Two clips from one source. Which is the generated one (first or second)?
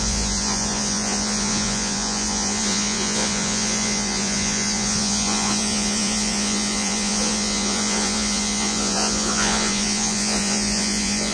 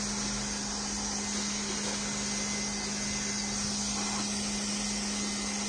first